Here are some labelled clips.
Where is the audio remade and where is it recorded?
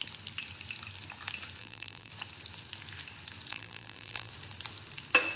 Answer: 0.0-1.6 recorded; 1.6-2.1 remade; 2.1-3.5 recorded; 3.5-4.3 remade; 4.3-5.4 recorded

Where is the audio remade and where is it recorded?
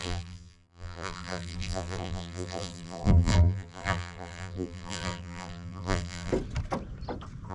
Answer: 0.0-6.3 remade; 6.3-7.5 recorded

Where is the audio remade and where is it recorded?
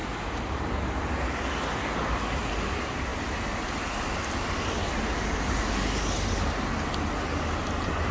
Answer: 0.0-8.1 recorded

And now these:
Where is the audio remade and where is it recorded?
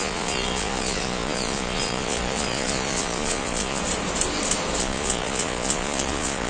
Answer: 0.0-3.8 remade; 3.8-4.8 recorded; 4.8-6.5 remade